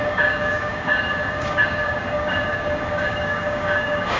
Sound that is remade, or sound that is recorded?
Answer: remade